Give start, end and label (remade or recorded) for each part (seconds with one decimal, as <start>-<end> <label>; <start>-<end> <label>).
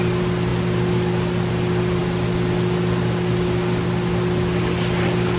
0.0-5.4 recorded